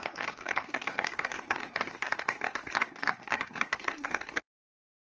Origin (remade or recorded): remade